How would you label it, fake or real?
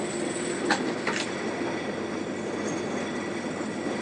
real